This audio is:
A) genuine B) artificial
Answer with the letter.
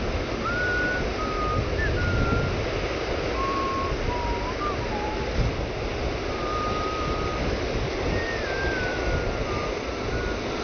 A